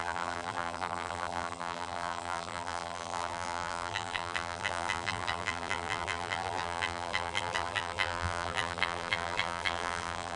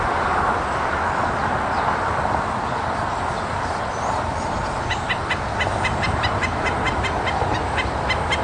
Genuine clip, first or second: second